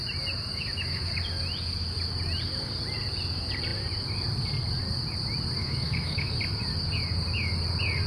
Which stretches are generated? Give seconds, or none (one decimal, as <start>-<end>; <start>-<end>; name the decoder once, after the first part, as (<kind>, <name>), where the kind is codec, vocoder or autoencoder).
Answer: 0.5-1.1 (autoencoder, DAC-VAE); 5.6-6.3